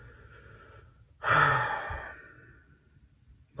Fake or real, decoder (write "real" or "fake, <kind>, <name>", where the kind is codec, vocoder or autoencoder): real